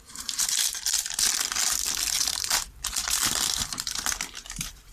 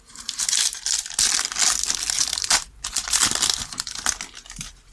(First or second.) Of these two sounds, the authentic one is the second